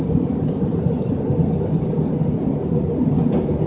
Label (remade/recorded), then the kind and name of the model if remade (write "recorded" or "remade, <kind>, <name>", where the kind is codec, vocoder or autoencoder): recorded